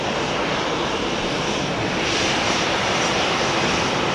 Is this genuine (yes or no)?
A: no